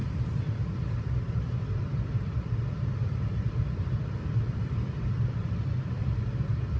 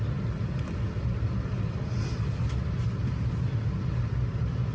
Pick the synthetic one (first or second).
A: first